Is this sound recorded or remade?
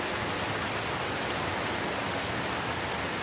recorded